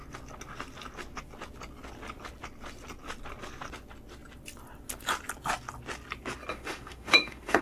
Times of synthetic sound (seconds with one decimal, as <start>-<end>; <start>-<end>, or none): 6.5-7.6

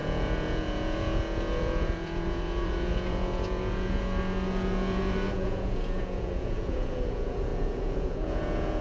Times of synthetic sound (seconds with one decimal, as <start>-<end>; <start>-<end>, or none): 0.0-8.8

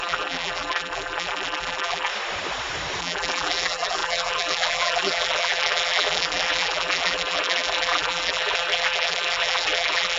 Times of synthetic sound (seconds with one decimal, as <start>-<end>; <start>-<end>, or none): 0.0-2.1; 3.0-10.2

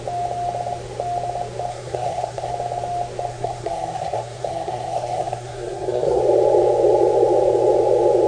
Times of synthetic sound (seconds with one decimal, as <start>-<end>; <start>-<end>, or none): 1.7-2.5; 3.3-6.2

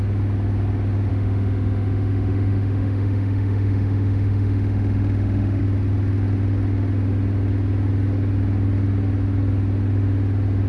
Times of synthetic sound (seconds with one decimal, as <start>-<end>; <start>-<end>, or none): 1.1-5.6

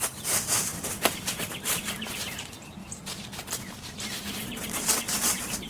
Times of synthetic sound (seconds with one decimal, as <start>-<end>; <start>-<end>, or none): 0.0-0.7; 1.7-5.7

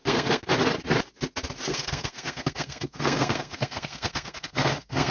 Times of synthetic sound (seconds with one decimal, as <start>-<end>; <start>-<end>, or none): 0.0-0.5; 1.7-5.1